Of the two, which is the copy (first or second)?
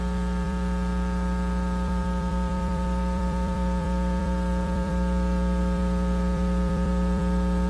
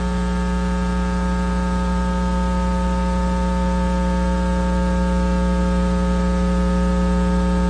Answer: first